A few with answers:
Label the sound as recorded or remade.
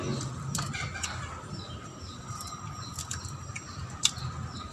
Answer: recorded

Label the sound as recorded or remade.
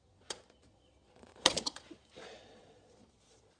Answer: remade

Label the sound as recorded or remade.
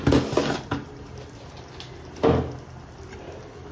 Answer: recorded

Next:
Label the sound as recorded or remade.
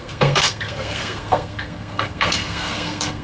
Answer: remade